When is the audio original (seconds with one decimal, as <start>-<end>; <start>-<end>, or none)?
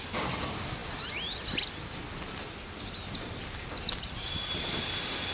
0.0-5.3